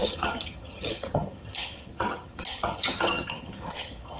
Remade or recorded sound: remade